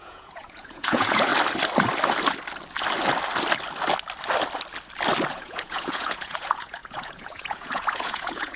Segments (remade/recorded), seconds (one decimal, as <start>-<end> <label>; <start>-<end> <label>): 0.0-1.3 remade; 1.3-5.3 recorded; 5.3-8.6 remade